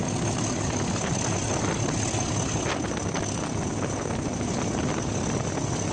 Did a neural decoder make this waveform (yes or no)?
no